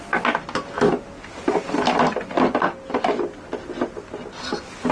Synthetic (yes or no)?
no